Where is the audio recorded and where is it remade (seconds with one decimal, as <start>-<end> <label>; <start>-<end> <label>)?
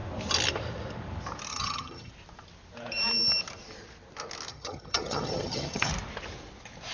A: 0.0-1.5 recorded; 1.5-2.1 remade; 2.1-4.5 recorded; 4.5-5.9 remade; 5.9-6.9 recorded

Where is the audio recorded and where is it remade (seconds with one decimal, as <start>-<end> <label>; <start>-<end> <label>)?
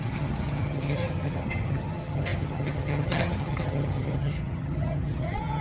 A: 0.0-5.6 remade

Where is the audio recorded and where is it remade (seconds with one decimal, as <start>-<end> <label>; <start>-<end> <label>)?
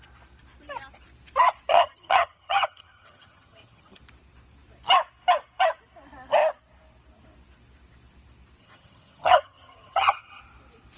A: 0.0-1.7 recorded; 1.7-4.0 remade; 4.0-8.6 recorded; 8.6-10.4 remade; 10.4-11.0 recorded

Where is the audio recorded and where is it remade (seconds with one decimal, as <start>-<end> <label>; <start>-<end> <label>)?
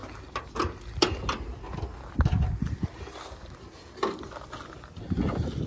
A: 0.0-5.7 recorded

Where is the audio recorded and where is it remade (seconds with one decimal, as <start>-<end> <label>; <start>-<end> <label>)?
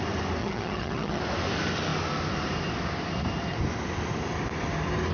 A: 0.0-0.4 recorded; 0.4-1.2 remade; 1.2-5.1 recorded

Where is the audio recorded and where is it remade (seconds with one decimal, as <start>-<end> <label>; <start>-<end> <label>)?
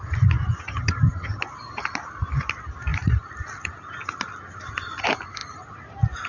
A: 0.0-0.7 recorded; 0.7-1.4 remade; 1.4-6.3 recorded